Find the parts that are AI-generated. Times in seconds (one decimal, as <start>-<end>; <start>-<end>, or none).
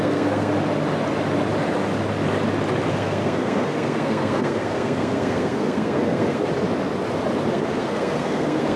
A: 0.0-0.5; 2.9-6.5; 7.5-8.8